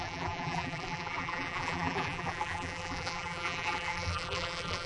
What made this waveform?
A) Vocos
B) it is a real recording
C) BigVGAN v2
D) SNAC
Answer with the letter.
C